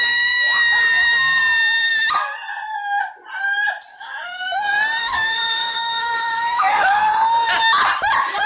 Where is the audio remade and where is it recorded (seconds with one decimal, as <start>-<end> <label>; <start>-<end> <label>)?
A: 0.0-3.9 recorded; 3.9-4.6 remade; 4.6-5.0 recorded; 5.0-7.0 remade; 7.0-8.5 recorded